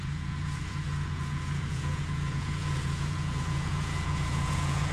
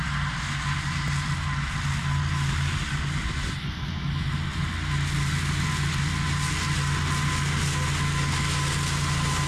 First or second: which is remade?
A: first